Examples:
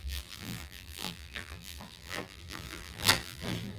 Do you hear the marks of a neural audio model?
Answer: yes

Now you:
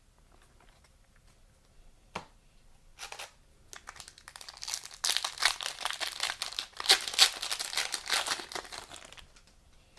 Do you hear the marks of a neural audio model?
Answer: no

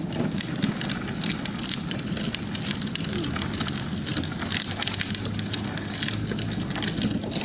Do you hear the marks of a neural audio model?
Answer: no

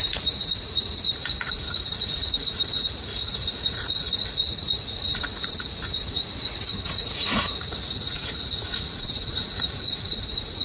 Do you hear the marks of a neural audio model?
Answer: yes